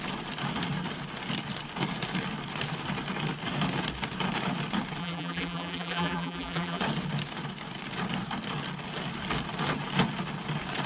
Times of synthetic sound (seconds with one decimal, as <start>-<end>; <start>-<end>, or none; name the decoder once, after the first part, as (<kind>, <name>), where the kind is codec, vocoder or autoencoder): 5.0-6.8 (vocoder, BigVGAN v2)